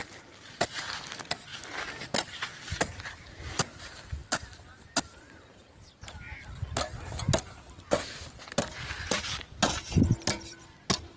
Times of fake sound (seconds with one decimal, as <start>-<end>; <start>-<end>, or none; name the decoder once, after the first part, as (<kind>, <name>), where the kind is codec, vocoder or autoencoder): none

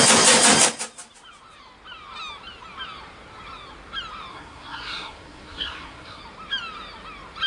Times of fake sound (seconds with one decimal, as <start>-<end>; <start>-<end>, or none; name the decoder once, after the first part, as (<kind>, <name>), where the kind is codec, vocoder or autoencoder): 4.3-6.2 (codec, SNAC)

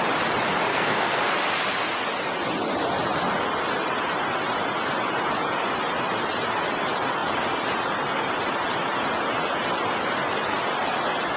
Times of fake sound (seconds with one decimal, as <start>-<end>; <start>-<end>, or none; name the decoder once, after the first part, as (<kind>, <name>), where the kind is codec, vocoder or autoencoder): 0.7-1.2 (codec, SNAC)

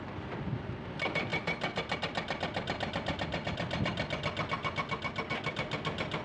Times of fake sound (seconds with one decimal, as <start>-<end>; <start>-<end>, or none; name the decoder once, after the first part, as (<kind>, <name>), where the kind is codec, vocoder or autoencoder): none

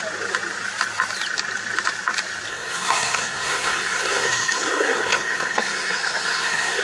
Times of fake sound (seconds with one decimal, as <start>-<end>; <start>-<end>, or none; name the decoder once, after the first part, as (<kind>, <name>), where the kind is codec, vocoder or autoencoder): 2.5-6.8 (codec, SNAC)

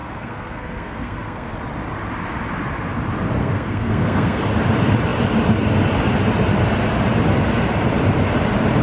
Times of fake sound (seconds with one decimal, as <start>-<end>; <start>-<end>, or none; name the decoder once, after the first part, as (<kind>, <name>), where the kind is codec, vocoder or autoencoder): 0.0-1.5 (codec, SNAC); 3.4-4.4

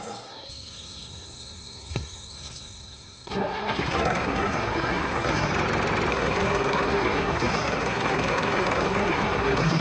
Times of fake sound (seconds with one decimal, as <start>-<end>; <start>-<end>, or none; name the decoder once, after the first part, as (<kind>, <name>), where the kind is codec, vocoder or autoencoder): 0.0-5.5 (codec, SNAC); 6.1-9.8